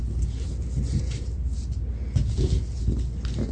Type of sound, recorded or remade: recorded